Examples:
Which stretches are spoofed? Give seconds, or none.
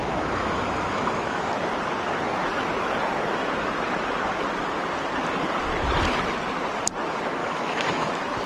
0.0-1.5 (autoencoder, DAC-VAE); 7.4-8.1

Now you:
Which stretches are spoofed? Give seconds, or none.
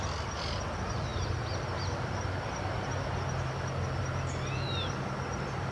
none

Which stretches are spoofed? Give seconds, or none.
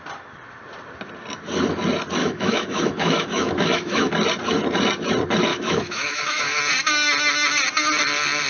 2.2-4.1 (autoencoder, DAC-VAE); 5.5-6.6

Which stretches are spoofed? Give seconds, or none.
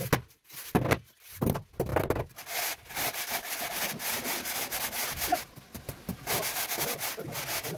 none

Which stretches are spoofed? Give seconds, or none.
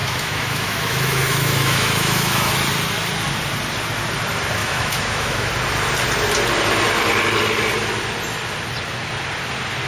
0.0-2.5 (autoencoder, DAC-VAE); 4.6-5.5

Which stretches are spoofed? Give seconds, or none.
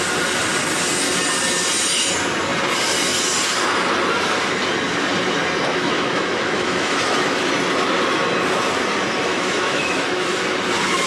5.7-7.5 (autoencoder, DAC-VAE); 9.3-10.3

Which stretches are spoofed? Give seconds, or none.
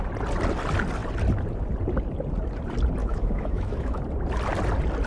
3.0-4.0 (autoencoder, DAC-VAE)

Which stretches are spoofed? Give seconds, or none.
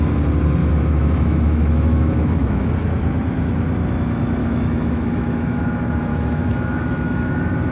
0.6-2.7 (autoencoder, DAC-VAE); 4.4-5.6; 6.1-7.3